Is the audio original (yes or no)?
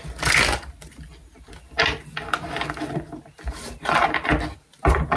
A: yes